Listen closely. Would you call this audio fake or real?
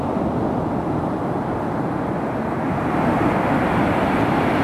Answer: real